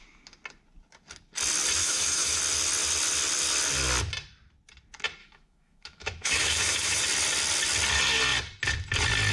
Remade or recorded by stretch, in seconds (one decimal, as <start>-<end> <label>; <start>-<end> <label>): 0.0-1.8 recorded; 1.8-2.4 remade; 2.4-5.2 recorded; 5.2-7.0 remade; 7.0-9.3 recorded